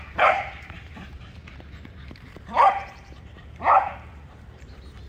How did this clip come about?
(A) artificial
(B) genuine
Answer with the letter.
A